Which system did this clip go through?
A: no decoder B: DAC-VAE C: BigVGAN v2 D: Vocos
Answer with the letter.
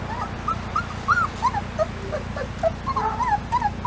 A